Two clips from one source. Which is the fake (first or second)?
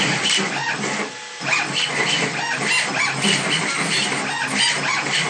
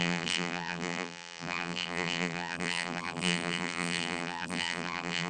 second